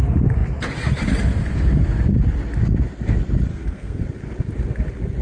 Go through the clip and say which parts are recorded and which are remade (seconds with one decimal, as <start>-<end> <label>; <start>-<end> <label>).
0.0-3.5 recorded; 3.5-4.0 remade; 4.0-5.2 recorded